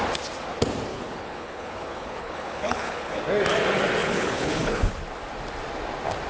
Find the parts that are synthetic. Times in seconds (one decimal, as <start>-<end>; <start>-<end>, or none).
0.9-3.2; 4.0-4.9